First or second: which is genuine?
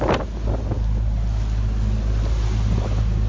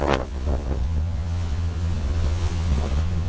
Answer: first